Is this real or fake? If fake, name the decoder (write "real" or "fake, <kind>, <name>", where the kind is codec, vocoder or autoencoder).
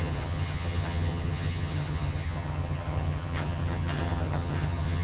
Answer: fake, vocoder, HiFi-GAN